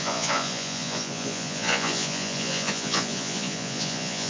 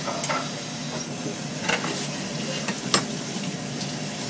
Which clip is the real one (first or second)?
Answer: second